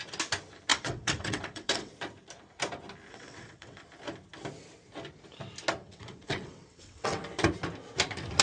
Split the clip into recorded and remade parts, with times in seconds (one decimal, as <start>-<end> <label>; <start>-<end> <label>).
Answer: 0.0-0.7 recorded; 0.7-1.9 remade; 1.9-3.1 recorded; 3.1-3.8 remade; 3.8-5.8 recorded; 5.8-7.2 remade; 7.2-8.4 recorded

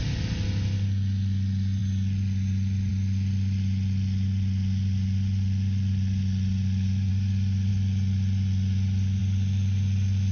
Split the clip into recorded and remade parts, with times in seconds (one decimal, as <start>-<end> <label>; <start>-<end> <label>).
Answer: 0.0-10.3 recorded

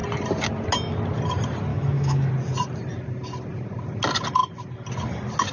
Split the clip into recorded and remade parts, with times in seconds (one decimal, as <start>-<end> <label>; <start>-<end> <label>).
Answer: 0.0-1.7 recorded; 1.7-2.3 remade; 2.3-5.5 recorded

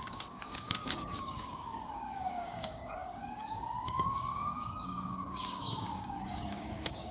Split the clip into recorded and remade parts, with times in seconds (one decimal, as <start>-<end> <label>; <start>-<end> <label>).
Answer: 0.0-7.1 remade